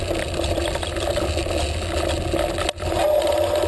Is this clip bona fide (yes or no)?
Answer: yes